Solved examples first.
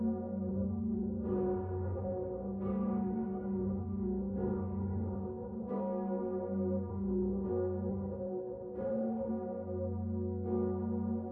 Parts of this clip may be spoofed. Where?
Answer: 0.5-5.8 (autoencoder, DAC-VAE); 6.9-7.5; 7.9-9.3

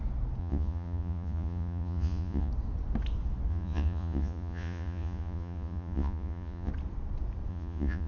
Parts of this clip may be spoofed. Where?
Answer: 0.4-2.5 (vocoder, Vocos); 3.5-6.7; 7.5-8.1